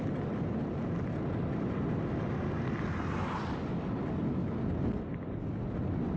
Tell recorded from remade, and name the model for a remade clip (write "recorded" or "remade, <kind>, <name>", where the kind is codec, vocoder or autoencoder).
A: recorded